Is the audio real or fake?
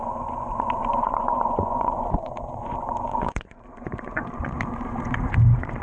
fake